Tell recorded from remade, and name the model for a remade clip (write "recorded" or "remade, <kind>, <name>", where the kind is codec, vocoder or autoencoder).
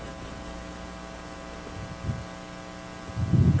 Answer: recorded